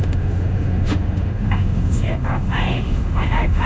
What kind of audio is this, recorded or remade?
remade